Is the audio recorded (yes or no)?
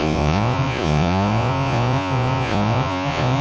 no